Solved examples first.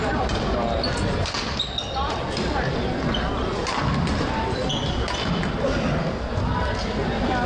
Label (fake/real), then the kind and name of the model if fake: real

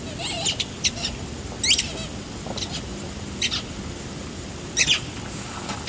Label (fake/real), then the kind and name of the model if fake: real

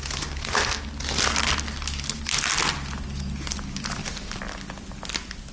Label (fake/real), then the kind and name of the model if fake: real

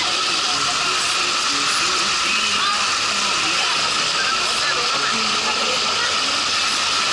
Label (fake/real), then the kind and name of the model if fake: real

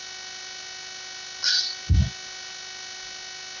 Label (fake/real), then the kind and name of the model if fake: real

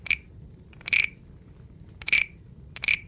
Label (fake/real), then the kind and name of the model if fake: real